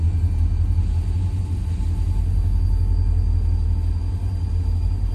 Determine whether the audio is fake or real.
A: real